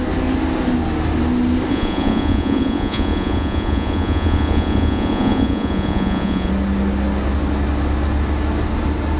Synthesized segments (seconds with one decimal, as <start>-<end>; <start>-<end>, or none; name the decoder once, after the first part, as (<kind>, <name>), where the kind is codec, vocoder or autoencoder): 1.7-6.5 (vocoder, Vocos)

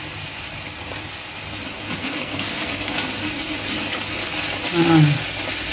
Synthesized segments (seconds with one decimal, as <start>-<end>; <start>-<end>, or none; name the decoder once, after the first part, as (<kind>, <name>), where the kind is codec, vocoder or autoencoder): 2.0-2.9 (codec, SNAC)